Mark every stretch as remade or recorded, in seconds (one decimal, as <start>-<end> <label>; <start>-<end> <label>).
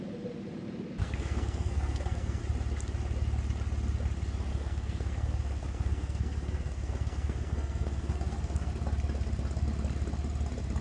0.0-1.0 recorded; 1.0-2.4 remade; 2.4-4.5 recorded; 4.5-8.7 remade; 8.7-10.8 recorded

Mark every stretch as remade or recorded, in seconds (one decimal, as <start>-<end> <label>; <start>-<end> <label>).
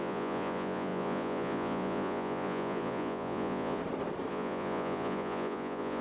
0.0-3.8 remade; 3.8-4.3 recorded; 4.3-6.0 remade